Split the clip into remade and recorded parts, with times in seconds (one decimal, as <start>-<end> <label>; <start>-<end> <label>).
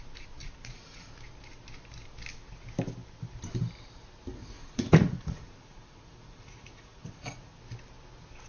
0.0-0.4 recorded; 0.4-1.1 remade; 1.1-4.4 recorded; 4.4-7.6 remade; 7.6-8.5 recorded